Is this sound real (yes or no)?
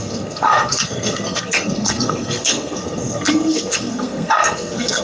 no